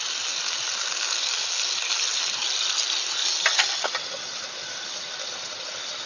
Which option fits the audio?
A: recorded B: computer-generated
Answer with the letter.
A